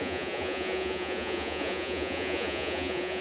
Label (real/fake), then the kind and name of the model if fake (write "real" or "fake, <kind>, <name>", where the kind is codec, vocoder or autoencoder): fake, vocoder, Vocos